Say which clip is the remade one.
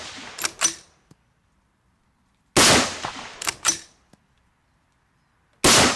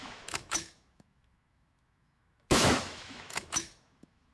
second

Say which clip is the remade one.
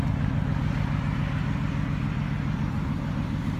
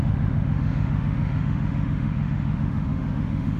second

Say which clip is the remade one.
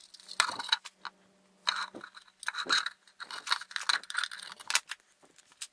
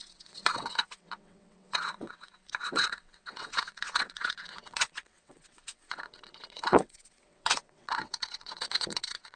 second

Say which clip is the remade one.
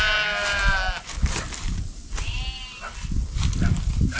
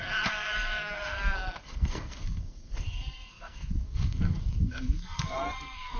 second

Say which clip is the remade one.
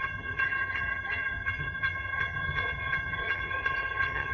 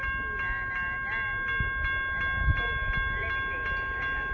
first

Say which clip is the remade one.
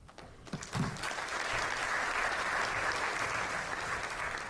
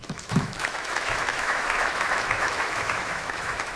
second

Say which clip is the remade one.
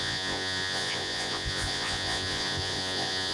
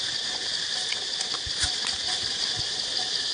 first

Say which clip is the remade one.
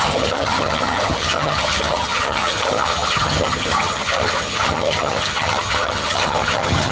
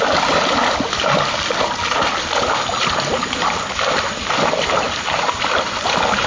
first